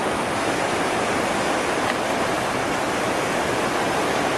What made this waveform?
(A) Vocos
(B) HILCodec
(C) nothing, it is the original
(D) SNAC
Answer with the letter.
C